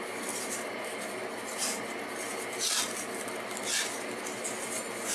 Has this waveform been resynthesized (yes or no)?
no